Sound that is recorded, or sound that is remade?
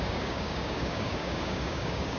remade